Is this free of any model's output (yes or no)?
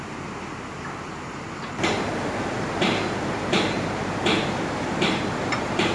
no